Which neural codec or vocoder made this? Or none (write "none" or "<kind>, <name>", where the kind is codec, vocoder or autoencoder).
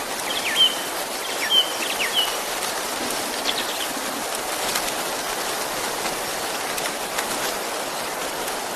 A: none